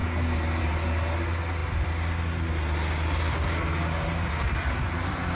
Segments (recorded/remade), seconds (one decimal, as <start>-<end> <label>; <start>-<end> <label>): 0.0-5.3 recorded